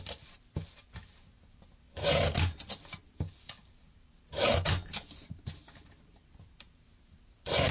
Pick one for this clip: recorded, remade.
remade